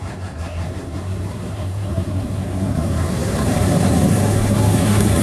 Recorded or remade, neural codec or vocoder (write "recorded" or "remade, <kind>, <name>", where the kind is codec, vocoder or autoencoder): remade, codec, SNAC